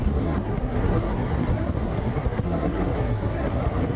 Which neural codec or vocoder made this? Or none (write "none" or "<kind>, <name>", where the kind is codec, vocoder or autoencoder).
codec, SNAC